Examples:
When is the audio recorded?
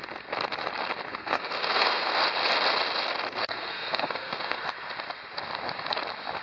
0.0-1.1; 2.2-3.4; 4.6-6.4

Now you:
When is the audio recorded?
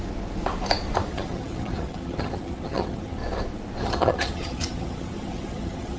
0.0-1.1; 3.2-3.8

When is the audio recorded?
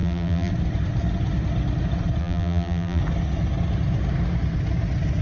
0.5-2.2; 3.0-5.2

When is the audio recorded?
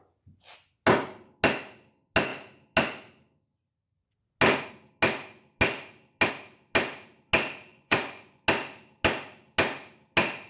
0.0-7.7; 8.4-10.5